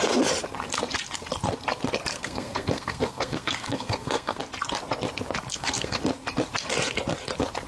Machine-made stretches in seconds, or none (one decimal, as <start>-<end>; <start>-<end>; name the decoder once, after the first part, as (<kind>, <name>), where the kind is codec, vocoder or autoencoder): 2.1-4.4 (codec, SNAC); 5.5-6.0